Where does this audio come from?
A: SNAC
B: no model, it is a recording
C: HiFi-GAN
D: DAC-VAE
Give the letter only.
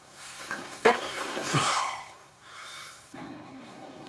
A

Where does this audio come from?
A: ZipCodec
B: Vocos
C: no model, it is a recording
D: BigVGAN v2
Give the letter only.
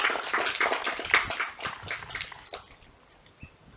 C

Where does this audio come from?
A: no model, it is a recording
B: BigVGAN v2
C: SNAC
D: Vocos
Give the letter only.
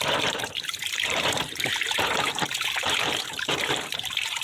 B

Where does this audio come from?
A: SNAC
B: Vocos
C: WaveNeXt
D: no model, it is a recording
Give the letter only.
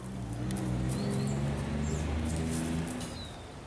D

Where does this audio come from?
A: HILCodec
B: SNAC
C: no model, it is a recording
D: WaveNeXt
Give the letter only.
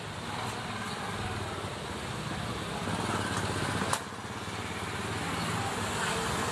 C